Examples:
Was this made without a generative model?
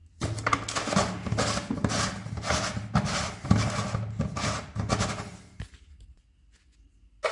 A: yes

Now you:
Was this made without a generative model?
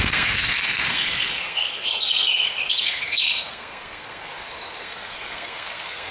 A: no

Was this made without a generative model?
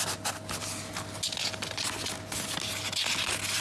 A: yes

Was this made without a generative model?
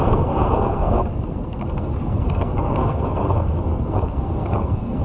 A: no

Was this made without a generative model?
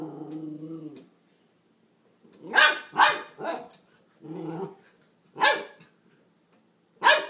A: yes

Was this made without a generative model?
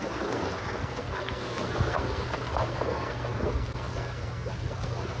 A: no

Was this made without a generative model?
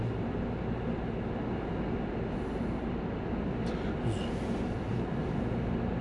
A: yes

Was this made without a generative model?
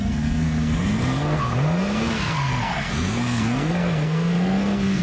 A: no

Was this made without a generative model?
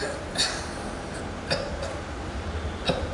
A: yes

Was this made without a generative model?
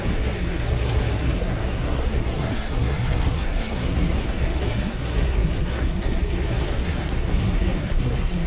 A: no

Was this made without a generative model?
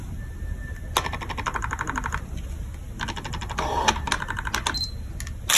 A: yes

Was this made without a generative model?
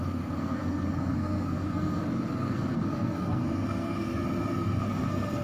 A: no